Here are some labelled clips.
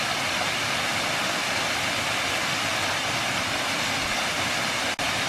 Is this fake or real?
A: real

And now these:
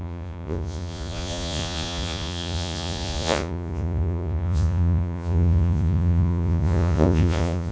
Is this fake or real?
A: fake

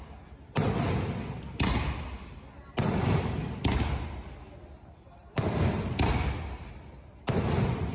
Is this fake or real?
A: real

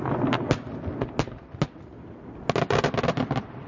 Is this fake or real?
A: real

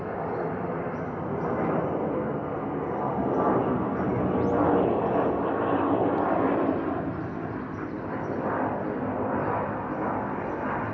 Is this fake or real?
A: real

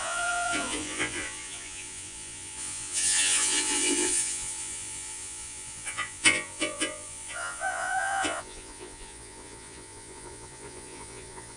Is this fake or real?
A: fake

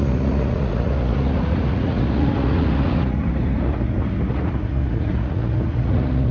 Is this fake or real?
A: fake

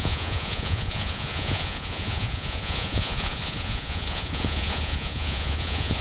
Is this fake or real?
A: fake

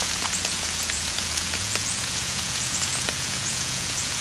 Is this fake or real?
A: fake